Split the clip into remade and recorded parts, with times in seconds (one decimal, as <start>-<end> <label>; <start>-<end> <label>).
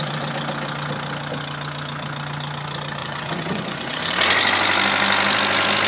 0.0-3.0 recorded; 3.0-4.1 remade; 4.1-5.9 recorded